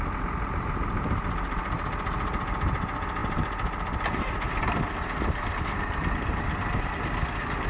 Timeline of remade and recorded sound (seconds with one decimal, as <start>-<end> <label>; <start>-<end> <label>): 0.0-7.7 recorded